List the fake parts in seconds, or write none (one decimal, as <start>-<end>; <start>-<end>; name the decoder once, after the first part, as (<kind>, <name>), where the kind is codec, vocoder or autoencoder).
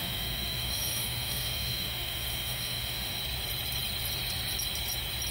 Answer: 0.0-3.2 (autoencoder, DAC-VAE)